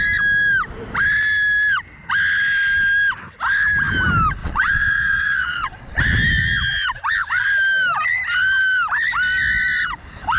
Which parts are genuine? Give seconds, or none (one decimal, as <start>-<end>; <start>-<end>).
0.0-4.4; 6.0-10.4